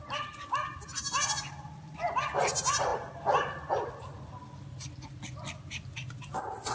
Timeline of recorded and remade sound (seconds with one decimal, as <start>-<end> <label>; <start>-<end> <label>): 0.0-6.7 recorded